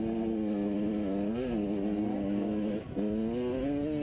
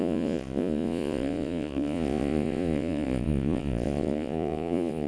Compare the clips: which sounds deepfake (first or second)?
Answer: second